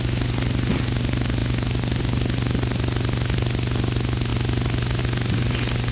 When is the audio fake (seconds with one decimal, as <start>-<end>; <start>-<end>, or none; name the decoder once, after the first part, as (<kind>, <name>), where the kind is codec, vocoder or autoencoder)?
none